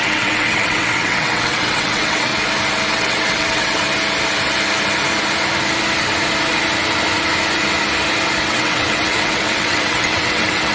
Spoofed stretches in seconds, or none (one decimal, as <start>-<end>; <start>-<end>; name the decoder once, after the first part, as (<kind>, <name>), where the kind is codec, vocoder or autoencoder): 0.0-2.3 (vocoder, WaveNeXt); 2.9-3.8; 8.4-10.7